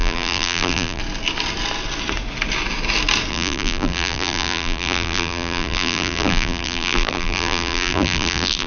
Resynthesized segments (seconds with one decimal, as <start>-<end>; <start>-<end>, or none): 0.0-1.0; 3.3-8.7